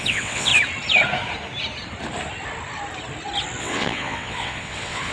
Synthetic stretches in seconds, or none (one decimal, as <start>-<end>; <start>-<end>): 0.0-0.5; 3.6-5.1